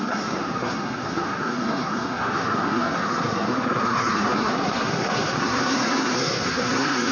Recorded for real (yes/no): no